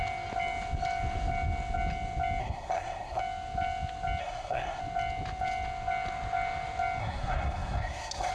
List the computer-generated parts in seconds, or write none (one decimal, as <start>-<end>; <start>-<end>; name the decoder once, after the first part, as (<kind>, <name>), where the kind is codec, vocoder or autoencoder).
2.4-3.2 (codec, SNAC); 4.2-4.8; 7.0-8.3